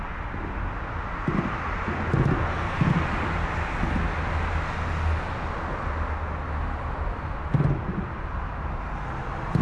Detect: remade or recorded recorded